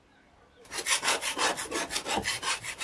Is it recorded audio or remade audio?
recorded